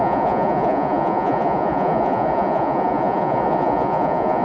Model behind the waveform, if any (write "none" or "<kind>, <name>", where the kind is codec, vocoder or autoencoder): vocoder, Vocos